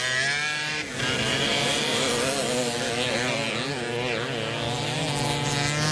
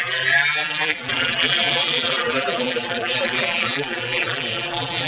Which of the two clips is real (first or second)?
first